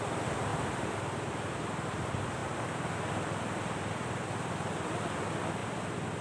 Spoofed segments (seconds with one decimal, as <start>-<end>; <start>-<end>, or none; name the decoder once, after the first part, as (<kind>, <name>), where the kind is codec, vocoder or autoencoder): 0.0-5.6 (vocoder, BigVGAN v2)